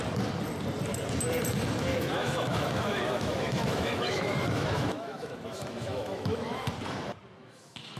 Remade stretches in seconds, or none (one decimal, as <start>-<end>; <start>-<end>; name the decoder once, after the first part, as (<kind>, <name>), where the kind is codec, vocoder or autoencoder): 1.9-6.7 (autoencoder, DAC-VAE); 7.4-8.0

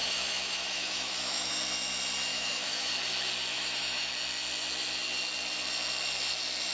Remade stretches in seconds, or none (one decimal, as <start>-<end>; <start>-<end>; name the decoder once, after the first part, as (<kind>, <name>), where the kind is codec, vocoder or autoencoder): 0.0-1.5 (autoencoder, DAC-VAE); 2.3-2.9; 3.5-4.1

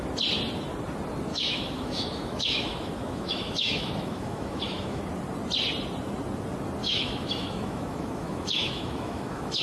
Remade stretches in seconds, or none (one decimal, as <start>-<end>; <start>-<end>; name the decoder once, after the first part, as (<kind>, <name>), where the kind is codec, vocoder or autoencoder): 1.3-5.0 (autoencoder, DAC-VAE); 6.8-9.6

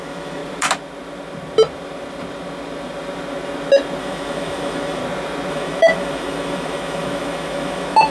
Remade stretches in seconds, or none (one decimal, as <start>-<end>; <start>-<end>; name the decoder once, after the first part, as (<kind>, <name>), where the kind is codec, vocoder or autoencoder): 0.0-0.4 (autoencoder, DAC-VAE); 4.0-5.0; 5.5-8.1

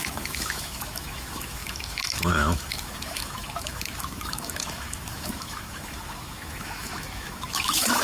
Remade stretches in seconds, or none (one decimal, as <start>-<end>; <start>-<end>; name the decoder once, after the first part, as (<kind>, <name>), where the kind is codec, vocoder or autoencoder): 0.0-8.0 (autoencoder, DAC-VAE)

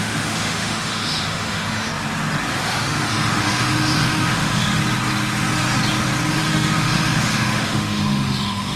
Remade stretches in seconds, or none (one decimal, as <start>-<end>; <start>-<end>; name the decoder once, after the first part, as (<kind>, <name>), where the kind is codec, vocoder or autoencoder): 0.0-1.9 (autoencoder, DAC-VAE); 2.5-4.8; 6.3-8.8